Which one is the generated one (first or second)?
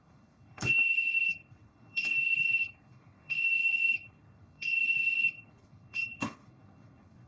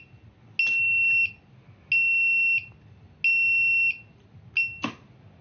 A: first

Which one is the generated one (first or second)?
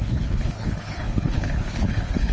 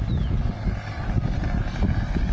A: first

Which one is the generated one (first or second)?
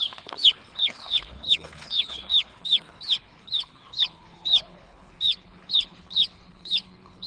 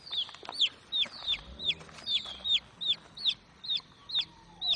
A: first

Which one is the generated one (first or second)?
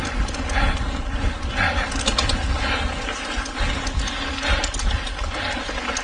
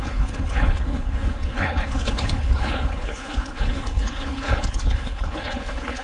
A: second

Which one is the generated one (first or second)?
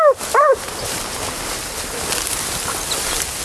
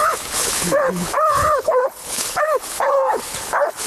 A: second